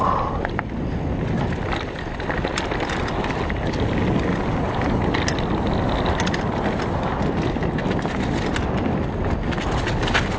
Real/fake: real